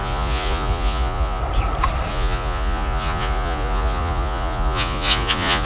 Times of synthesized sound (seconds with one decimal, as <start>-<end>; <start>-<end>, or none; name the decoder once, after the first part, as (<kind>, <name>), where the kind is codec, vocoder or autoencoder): 0.0-1.4 (vocoder, Vocos); 2.1-5.7